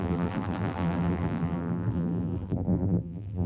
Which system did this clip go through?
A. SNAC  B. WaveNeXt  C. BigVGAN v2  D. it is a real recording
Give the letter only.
C